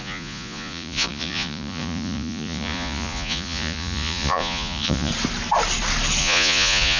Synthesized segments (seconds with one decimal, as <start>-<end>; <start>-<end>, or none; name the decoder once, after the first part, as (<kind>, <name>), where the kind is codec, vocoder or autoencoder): 0.0-5.1 (vocoder, Vocos); 6.2-7.0